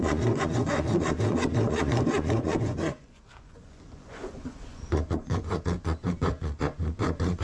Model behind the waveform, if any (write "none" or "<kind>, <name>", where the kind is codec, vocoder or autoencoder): vocoder, Vocos